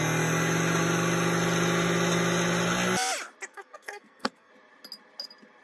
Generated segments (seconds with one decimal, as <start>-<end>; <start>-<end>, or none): 3.5-4.5